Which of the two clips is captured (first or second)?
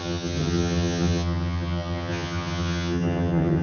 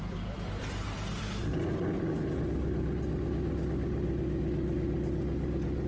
second